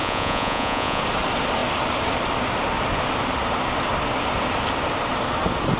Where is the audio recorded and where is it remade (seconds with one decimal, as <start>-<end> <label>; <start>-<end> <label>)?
0.0-1.0 remade; 1.0-5.8 recorded